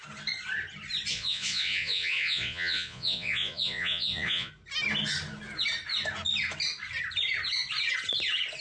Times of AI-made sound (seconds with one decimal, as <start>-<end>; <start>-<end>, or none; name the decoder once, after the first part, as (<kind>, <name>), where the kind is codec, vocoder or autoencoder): 1.1-4.5 (vocoder, Vocos)